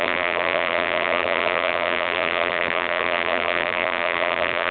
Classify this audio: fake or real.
fake